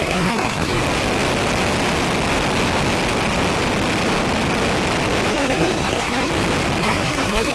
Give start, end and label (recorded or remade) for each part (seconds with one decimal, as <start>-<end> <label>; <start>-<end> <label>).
0.0-0.8 remade; 0.8-5.3 recorded; 5.3-6.3 remade; 6.3-6.8 recorded; 6.8-7.5 remade